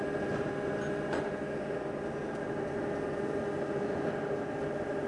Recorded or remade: recorded